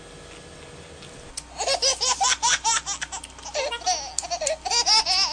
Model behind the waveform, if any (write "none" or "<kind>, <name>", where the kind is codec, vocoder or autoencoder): none